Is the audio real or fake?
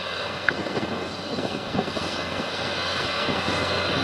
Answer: fake